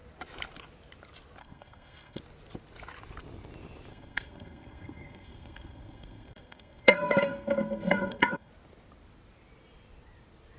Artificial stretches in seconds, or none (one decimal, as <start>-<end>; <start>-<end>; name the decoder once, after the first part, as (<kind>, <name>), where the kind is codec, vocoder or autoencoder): 1.4-2.2 (codec, SNAC); 3.9-8.5